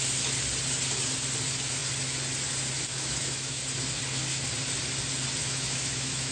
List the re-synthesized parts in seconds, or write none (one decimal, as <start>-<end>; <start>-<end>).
2.9-3.6; 5.4-6.3

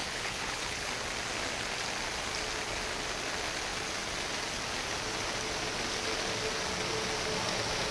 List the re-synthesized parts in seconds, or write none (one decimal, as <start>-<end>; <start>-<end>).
0.0-0.9

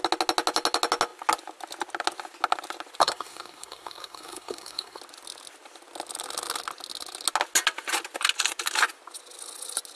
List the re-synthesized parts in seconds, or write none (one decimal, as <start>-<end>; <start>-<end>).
3.0-5.0

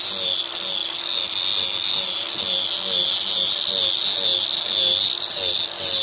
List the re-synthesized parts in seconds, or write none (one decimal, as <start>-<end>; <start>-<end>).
none

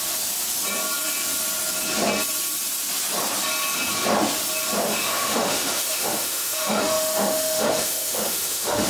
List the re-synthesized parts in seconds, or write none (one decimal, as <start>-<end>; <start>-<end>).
4.9-8.9

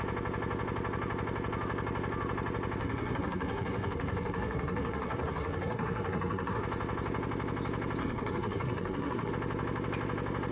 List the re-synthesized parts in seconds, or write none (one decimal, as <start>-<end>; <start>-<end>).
2.8-6.6; 8.0-9.3